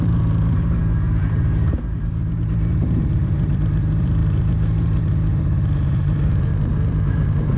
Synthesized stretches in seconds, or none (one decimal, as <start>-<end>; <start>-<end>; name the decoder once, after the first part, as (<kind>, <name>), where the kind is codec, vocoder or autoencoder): 0.0-6.5 (vocoder, BigVGAN v2); 7.1-7.6